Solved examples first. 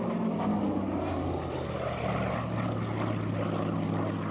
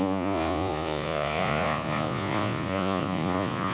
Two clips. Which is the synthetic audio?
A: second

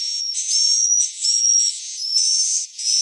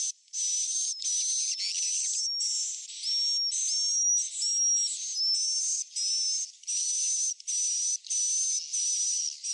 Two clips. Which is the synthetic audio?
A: first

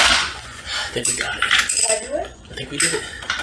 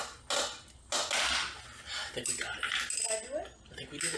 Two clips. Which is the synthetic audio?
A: first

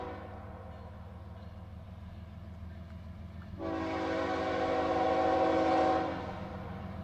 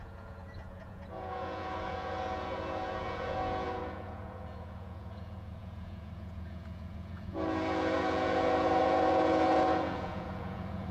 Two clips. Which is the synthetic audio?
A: second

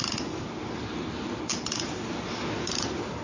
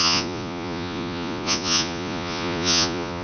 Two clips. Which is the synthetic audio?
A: second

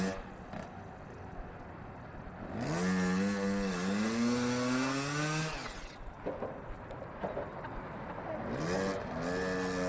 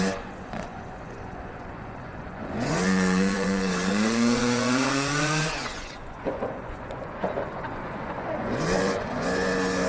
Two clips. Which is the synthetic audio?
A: second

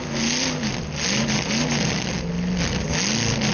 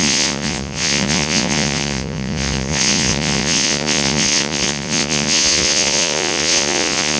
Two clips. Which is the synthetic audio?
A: second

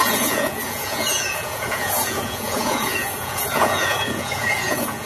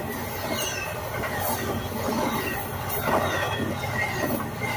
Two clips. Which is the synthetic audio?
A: first